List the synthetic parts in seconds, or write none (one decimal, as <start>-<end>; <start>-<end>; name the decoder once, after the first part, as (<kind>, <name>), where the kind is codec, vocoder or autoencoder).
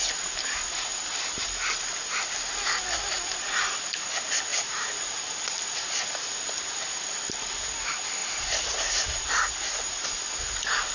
4.5-7.6 (vocoder, BigVGAN v2); 8.2-9.4